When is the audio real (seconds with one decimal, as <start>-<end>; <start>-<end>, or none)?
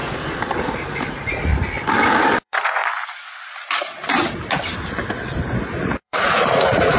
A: 0.0-1.1; 1.5-2.4; 2.8-5.8